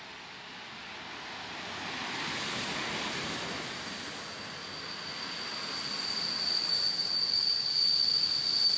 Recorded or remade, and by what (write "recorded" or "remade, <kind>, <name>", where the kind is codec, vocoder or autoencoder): recorded